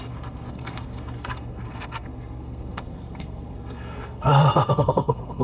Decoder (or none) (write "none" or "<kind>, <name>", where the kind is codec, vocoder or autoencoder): codec, SNAC